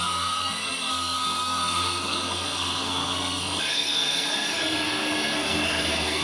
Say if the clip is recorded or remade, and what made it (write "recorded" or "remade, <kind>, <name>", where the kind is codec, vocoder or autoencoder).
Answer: remade, codec, SNAC